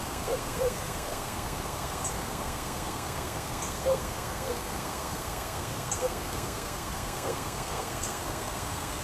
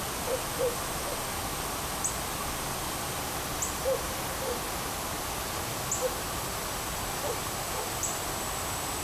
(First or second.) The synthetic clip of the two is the first